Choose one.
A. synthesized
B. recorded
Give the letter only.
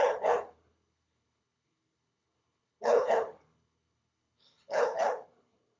A